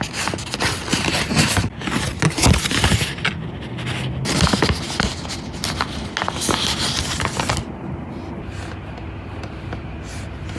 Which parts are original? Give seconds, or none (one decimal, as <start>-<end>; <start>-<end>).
0.0-0.9; 1.9-10.6